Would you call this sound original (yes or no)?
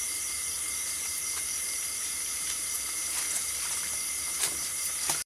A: no